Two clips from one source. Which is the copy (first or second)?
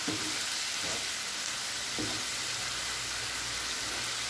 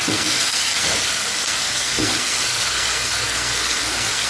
second